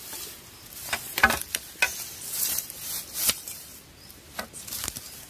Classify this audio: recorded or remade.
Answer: recorded